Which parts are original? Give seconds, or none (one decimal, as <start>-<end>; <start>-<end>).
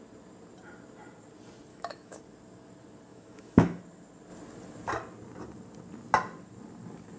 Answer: 0.0-1.7; 2.2-3.1; 3.8-7.2